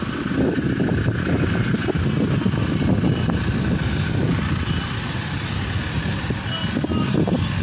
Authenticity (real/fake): real